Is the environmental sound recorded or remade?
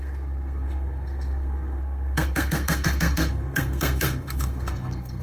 remade